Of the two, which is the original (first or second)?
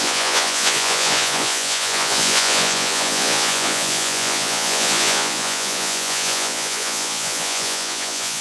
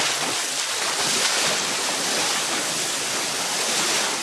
second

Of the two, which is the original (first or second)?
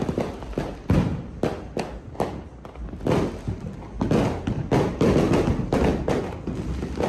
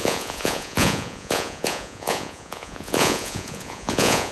first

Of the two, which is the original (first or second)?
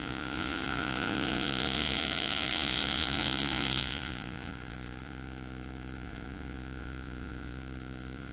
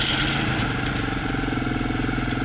second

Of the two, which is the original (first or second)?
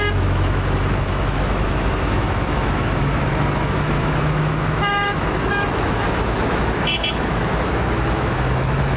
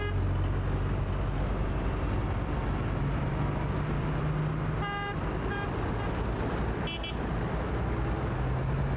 second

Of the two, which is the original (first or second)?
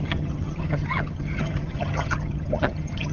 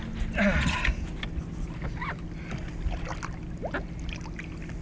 second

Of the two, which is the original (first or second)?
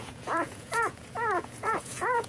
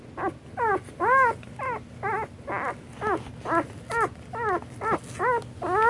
second